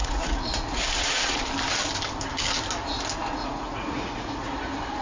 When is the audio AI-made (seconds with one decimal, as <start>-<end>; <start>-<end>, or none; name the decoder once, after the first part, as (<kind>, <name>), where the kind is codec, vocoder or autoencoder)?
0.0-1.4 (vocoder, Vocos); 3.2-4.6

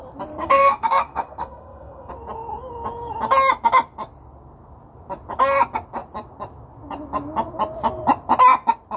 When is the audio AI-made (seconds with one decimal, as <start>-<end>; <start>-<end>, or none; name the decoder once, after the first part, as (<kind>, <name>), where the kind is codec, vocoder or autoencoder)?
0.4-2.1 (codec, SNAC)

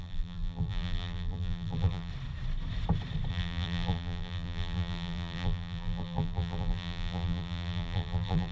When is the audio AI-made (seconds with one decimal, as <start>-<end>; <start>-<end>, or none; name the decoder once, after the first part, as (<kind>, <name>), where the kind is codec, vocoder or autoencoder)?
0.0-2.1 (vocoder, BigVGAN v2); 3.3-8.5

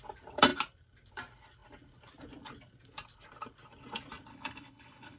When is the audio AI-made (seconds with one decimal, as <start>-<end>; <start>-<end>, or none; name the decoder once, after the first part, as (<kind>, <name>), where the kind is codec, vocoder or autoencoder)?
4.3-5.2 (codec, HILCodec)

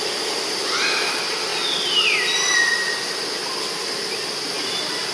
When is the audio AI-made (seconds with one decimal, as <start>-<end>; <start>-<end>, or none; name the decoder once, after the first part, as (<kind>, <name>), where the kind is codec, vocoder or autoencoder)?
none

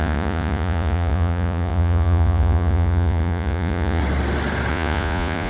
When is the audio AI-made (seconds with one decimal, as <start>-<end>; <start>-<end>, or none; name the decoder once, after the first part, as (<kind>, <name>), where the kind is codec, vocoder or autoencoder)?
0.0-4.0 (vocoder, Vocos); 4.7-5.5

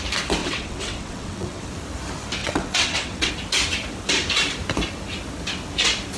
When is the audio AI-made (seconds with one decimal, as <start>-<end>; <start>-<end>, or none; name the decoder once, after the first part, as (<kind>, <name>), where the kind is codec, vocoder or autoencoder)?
0.4-1.7 (vocoder, WaveNeXt); 2.4-3.3